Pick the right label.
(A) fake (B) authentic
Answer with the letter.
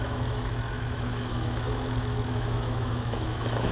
A